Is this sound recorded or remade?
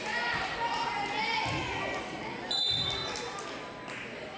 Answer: recorded